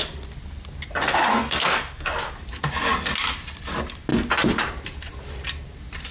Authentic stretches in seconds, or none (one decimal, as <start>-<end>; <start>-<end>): 0.0-1.3; 2.1-6.1